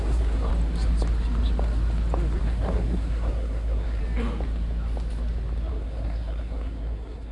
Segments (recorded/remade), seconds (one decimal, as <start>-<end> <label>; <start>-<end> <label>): 0.0-0.5 remade; 0.5-2.4 recorded; 2.4-4.0 remade; 4.0-5.7 recorded; 5.7-7.3 remade